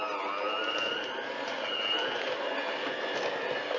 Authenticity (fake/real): real